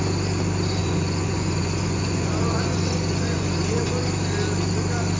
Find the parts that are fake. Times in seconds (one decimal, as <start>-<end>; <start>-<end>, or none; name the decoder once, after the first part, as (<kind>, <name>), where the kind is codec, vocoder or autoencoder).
0.8-3.9 (vocoder, Vocos)

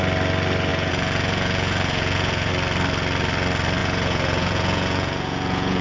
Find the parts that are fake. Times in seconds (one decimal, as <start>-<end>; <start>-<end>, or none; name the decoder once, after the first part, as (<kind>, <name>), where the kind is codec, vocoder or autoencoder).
0.7-2.5 (vocoder, Vocos); 3.8-5.8

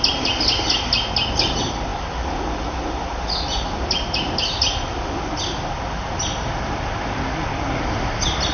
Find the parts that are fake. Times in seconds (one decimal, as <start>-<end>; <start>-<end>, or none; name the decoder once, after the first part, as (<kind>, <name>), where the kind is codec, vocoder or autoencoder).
none

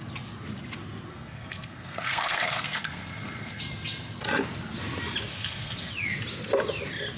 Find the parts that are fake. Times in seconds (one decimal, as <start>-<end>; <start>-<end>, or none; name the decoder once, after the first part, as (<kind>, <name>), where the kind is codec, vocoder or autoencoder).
1.1-3.6 (codec, SNAC); 5.3-5.9

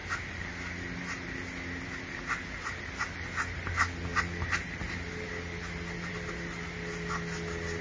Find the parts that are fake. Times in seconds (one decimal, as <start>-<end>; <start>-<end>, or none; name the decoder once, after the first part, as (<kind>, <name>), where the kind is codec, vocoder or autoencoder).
none

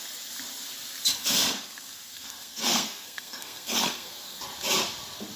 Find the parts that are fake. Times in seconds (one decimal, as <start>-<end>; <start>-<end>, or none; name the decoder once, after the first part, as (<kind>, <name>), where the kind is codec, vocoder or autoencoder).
1.2-4.4 (codec, SNAC)

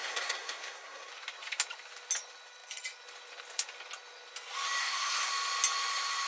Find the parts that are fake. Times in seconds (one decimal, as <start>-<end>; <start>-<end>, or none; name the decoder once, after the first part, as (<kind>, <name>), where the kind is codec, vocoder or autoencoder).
0.0-1.1 (codec, SNAC); 4.8-5.3